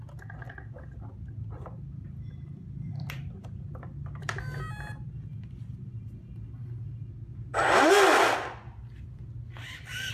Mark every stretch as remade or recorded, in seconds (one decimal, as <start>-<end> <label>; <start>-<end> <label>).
0.0-2.0 recorded; 2.0-6.1 remade; 6.1-7.3 recorded; 7.3-7.9 remade; 7.9-10.1 recorded